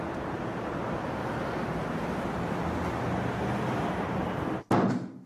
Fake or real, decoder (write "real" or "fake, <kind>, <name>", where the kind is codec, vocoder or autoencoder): real